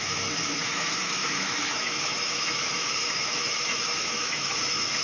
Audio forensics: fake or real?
fake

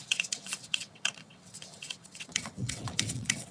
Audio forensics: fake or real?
fake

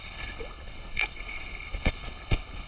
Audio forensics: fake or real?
fake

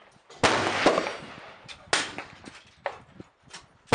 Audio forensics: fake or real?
real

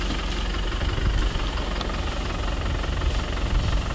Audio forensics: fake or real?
real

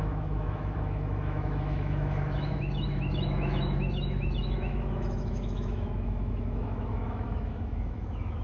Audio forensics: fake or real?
fake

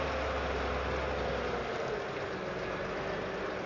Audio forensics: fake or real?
real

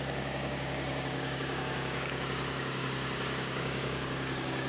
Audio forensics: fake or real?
fake